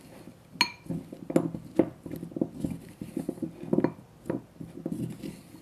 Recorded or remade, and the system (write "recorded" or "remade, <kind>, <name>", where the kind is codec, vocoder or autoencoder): recorded